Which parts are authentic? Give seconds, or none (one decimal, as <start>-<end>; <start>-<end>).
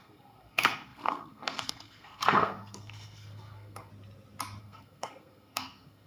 3.9-4.6